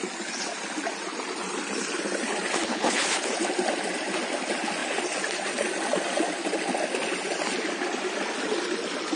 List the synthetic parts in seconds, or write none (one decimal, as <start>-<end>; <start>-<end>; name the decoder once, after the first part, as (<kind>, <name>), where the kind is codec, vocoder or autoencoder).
2.7-3.3 (codec, HILCodec)